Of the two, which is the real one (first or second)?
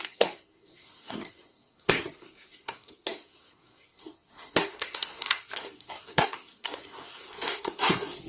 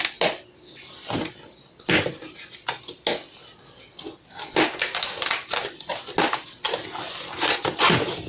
second